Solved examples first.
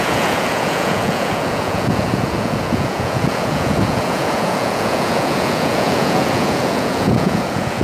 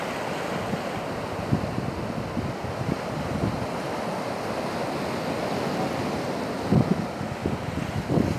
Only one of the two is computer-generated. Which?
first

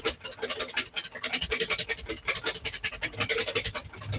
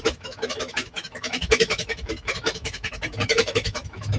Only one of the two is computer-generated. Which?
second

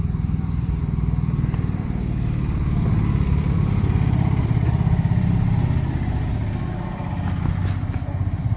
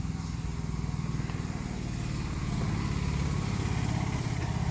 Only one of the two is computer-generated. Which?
first